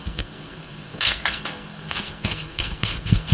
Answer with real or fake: fake